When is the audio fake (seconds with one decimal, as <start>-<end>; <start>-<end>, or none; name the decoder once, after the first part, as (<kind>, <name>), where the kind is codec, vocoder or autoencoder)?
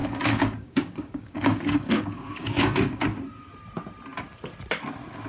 0.0-3.2 (codec, DAC)